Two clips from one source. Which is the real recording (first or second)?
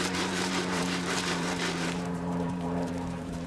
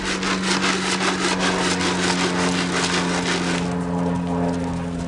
second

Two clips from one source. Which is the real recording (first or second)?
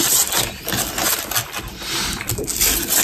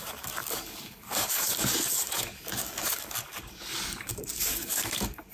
first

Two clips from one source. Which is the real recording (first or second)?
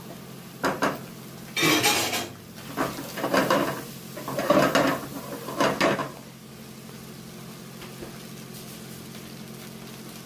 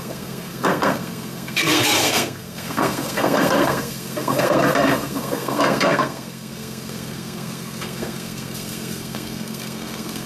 first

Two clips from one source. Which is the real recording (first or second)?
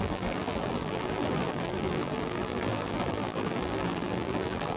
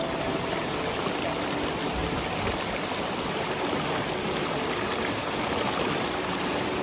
second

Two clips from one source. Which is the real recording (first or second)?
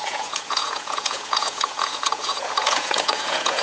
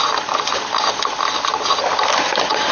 second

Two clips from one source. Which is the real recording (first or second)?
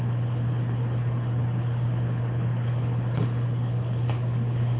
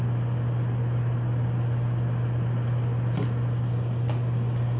second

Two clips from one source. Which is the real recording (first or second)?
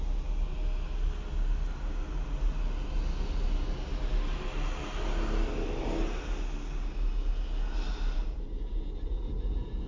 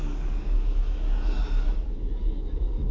first